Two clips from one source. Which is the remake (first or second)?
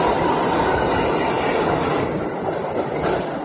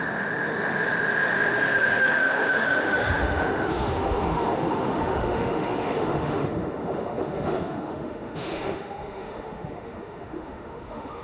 second